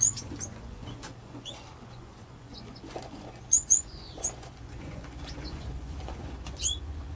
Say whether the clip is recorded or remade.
remade